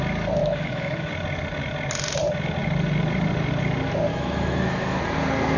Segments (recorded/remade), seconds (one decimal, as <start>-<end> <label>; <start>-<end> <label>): 0.0-0.4 recorded; 0.4-1.1 remade; 1.1-4.1 recorded; 4.1-5.0 remade; 5.0-5.6 recorded

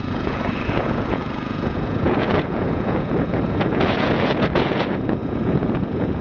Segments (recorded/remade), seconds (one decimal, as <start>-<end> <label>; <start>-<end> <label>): 0.0-6.2 remade

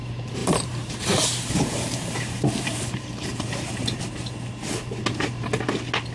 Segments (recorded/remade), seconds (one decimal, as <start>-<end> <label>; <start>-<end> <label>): 0.0-0.4 recorded; 0.4-4.0 remade; 4.0-6.1 recorded

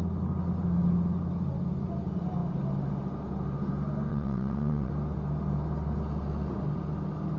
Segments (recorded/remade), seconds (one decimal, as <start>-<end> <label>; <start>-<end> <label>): 0.0-4.1 recorded; 4.1-4.9 remade; 4.9-7.4 recorded